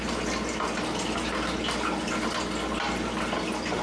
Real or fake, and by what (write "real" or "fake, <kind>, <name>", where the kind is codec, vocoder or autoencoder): real